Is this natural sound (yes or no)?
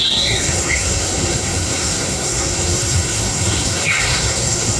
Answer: no